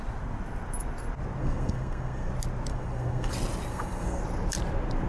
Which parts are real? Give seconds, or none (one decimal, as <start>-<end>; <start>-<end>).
0.0-1.4; 2.3-2.7; 3.3-3.7; 4.2-5.1